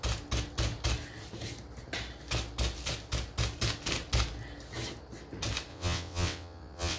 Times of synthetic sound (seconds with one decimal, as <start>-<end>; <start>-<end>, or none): 5.7-7.0

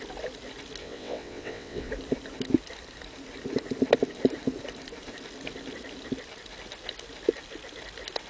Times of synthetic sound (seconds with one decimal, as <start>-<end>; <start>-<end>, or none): 0.8-1.9

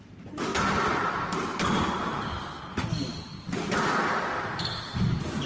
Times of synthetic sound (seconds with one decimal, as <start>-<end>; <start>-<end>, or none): none

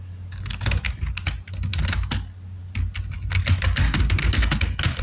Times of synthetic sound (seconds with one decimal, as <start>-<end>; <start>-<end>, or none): none

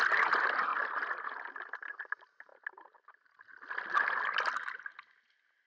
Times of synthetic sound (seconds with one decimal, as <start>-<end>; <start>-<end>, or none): none